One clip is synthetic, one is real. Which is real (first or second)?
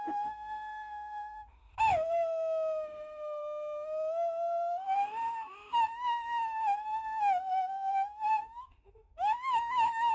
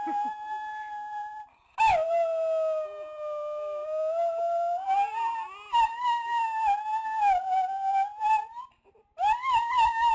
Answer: second